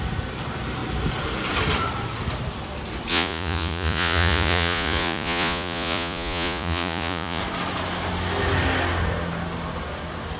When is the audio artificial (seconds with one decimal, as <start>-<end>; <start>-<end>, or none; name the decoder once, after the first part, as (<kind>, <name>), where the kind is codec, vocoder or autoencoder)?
3.1-7.4 (vocoder, Vocos)